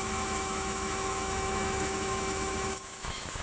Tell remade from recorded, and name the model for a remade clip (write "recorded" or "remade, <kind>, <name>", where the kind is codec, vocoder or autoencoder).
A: remade, autoencoder, DAC-VAE